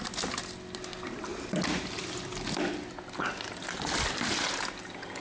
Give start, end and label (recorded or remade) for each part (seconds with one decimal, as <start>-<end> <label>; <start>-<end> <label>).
0.0-5.2 recorded